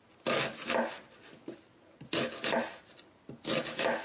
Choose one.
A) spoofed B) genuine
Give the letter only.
B